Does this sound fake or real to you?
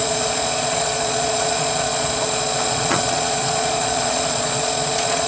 fake